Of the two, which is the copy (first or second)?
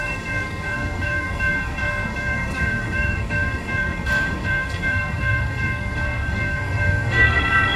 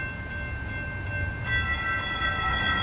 first